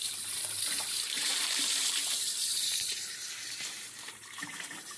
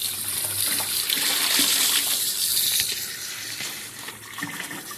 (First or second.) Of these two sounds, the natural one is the second